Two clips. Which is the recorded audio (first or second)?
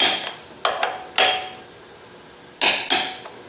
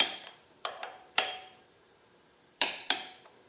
first